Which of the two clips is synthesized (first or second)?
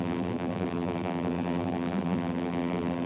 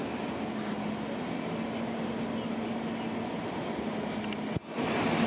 first